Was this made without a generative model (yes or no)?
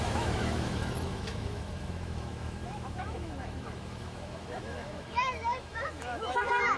no